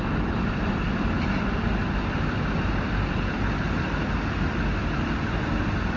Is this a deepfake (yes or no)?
no